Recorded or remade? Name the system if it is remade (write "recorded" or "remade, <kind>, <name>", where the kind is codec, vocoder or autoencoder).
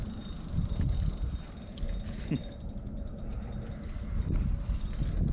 recorded